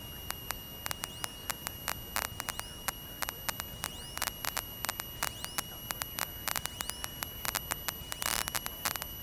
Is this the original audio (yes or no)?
yes